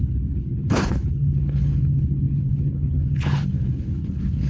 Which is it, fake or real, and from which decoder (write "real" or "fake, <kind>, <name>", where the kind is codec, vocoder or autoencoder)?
fake, codec, HILCodec